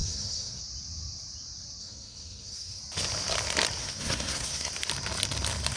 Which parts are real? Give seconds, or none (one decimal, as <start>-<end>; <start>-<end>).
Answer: 0.6-1.8; 2.8-3.8; 4.7-5.8